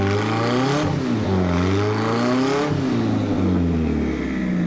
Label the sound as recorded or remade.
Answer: recorded